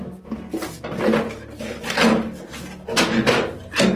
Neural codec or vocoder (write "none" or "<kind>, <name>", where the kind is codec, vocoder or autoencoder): none